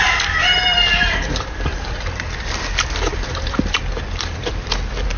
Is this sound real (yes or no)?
no